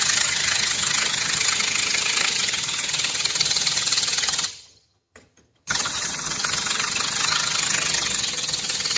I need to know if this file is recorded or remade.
remade